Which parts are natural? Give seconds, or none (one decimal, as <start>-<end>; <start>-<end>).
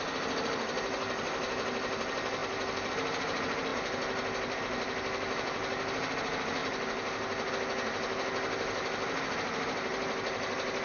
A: 0.0-10.8